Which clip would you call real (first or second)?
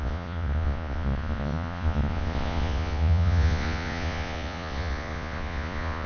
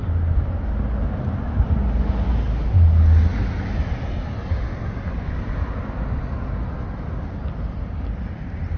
second